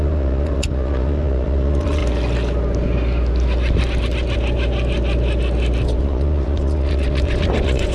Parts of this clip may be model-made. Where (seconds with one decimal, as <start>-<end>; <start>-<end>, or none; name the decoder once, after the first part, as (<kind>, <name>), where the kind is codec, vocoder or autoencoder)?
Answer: 0.0-2.0 (vocoder, Vocos); 6.0-7.9